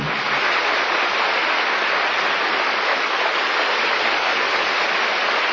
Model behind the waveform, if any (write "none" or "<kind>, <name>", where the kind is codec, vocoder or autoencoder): none